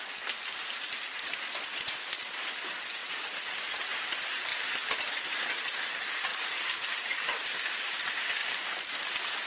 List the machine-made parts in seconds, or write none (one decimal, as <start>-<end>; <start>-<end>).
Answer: 4.5-5.5; 6.3-7.7; 8.4-9.5